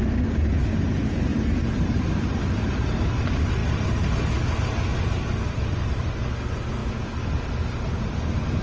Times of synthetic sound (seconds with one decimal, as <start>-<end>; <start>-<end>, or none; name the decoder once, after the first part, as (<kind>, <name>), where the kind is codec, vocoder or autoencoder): 1.3-3.1 (vocoder, BigVGAN v2)